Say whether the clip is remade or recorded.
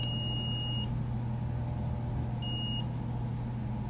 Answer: recorded